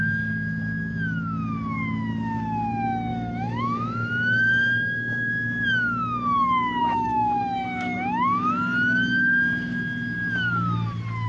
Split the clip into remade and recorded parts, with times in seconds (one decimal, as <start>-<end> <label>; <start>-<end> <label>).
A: 0.0-3.1 recorded; 3.1-5.3 remade; 5.3-6.8 recorded; 6.8-8.5 remade; 8.5-11.3 recorded